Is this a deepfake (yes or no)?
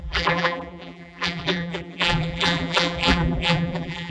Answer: yes